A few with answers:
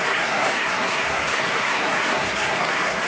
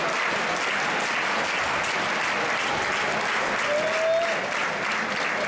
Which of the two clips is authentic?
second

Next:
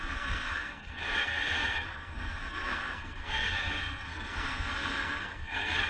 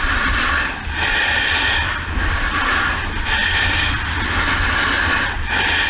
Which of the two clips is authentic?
second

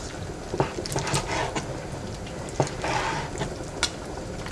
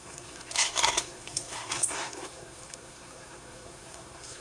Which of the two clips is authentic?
first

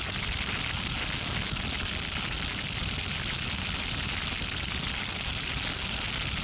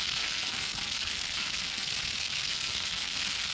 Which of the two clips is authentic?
first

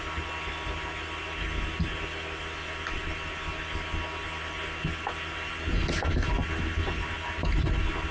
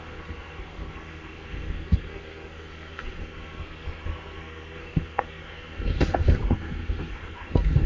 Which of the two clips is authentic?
first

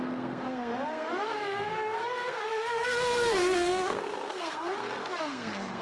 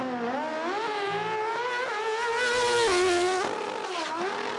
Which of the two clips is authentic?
second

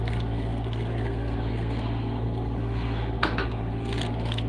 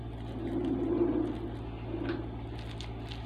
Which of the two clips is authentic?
second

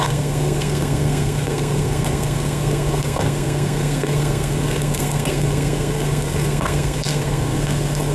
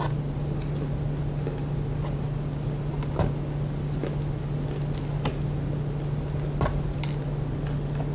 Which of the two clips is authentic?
second